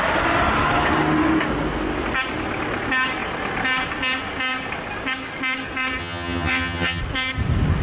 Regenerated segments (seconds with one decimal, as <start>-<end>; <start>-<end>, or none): 6.0-7.0